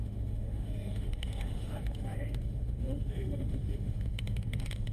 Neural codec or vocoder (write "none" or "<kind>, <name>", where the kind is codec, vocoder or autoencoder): autoencoder, DAC-VAE